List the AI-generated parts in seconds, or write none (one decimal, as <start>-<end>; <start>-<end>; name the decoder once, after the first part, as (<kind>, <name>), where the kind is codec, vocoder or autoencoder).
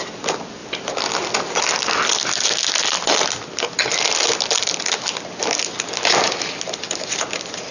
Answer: none